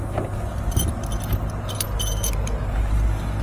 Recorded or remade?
recorded